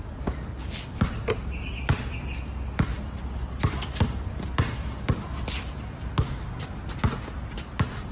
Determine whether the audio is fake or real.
real